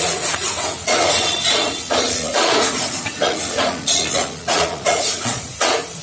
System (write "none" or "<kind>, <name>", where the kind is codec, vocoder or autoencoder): vocoder, Vocos